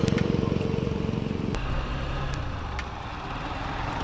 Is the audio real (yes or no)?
no